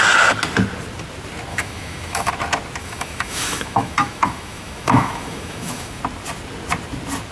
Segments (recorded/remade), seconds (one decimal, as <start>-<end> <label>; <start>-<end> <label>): 0.0-1.5 recorded; 1.5-2.3 remade; 2.3-2.8 recorded; 2.8-6.0 remade; 6.0-7.3 recorded